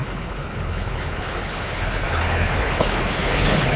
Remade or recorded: remade